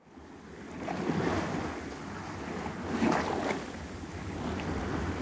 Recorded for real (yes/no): yes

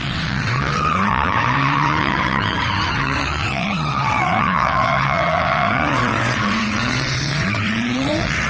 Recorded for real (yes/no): no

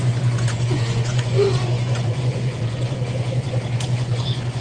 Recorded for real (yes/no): no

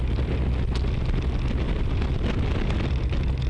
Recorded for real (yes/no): yes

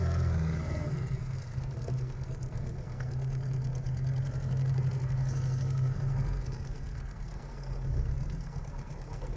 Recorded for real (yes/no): no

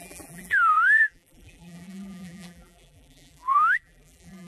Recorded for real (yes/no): no